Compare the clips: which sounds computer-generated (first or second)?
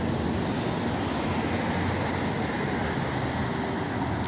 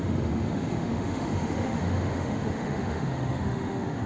second